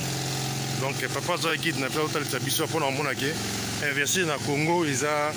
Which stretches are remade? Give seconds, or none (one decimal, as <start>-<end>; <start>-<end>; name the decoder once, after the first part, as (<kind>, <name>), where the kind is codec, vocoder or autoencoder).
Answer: 0.9-5.4 (autoencoder, DAC-VAE)